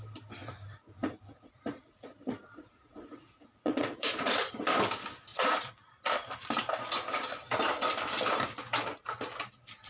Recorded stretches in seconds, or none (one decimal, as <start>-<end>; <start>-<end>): 0.0-0.4; 4.5-5.3; 6.0-9.9